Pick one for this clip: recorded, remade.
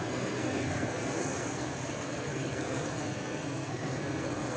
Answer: remade